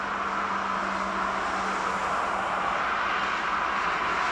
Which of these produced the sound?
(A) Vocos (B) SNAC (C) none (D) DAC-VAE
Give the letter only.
C